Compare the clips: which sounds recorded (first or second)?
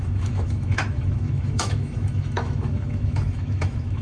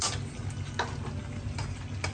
second